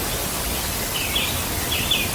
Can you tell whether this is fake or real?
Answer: real